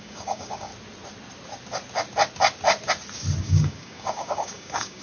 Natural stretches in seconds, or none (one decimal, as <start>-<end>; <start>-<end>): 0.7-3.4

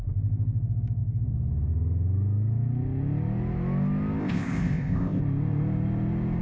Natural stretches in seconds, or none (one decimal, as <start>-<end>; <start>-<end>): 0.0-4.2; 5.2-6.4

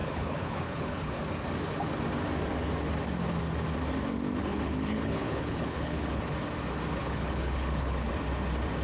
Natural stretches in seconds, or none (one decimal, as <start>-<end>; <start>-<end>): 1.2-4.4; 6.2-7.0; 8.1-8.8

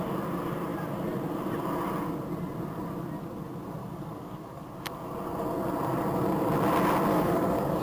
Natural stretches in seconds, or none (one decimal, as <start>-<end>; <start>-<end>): 0.0-3.8; 4.6-7.1